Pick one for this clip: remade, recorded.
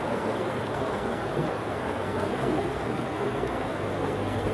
remade